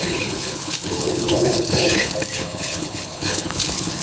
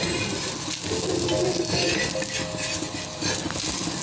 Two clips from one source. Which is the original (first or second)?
second